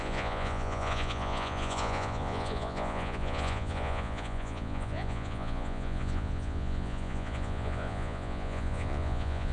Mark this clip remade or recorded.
remade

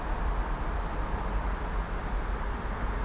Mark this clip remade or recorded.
recorded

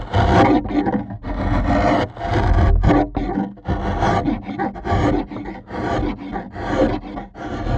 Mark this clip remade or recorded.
recorded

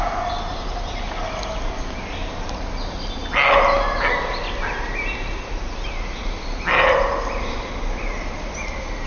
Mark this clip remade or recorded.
recorded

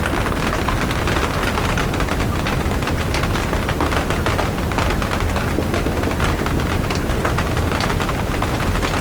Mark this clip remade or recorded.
recorded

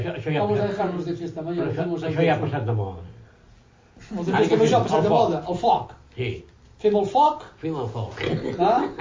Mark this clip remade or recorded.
recorded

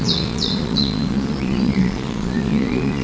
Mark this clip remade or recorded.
remade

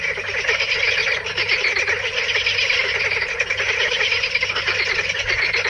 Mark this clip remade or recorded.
recorded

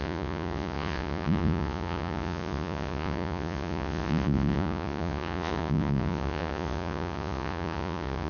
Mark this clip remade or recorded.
remade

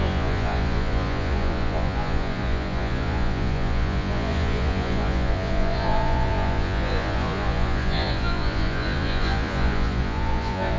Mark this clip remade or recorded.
remade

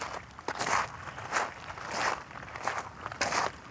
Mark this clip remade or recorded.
recorded